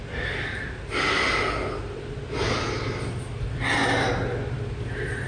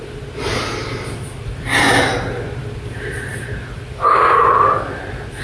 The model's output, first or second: second